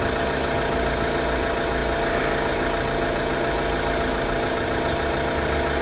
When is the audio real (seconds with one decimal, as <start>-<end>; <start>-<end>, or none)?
0.0-5.8